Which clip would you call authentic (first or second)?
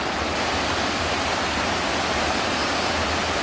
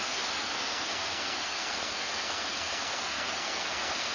first